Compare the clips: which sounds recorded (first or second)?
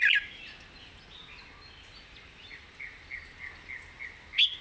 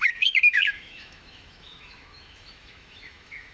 first